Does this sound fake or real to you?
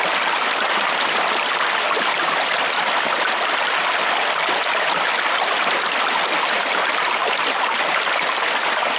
real